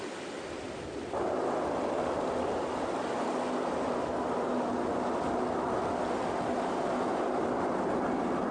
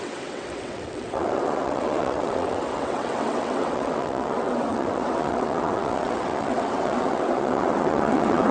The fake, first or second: second